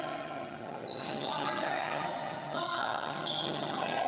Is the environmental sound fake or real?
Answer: fake